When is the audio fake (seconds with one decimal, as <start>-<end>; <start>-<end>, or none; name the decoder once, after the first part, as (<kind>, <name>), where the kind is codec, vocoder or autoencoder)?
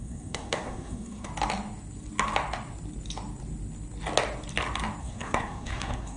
0.0-1.3 (codec, SNAC); 5.0-6.2